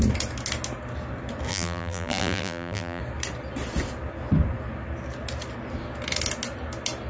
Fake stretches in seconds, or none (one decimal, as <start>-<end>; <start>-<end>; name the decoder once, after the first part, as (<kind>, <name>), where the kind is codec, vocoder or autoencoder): 1.5-3.0 (vocoder, BigVGAN v2)